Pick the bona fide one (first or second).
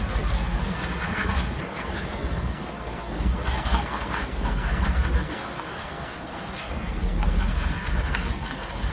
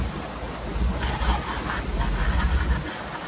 second